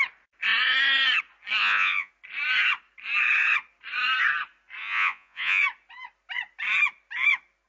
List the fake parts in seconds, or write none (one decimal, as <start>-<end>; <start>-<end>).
1.6-2.1; 4.8-5.6